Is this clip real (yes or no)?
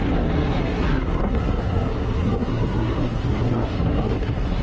no